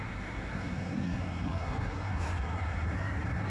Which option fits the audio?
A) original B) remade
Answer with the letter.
B